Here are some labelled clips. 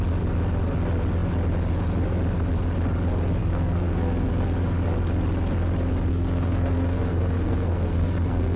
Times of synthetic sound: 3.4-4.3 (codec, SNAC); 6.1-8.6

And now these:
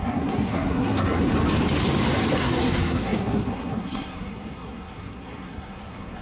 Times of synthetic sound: 0.0-1.3 (codec, SNAC); 2.4-6.2

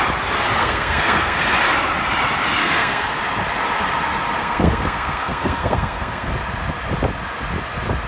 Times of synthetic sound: 0.6-1.4 (codec, SNAC); 2.6-3.2; 4.4-6.3

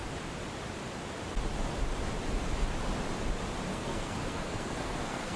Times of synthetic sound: 3.7-5.4 (codec, SNAC)

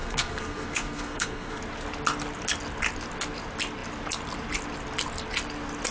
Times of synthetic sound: 0.0-1.6 (codec, SNAC)

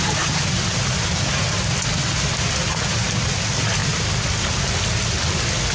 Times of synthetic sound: none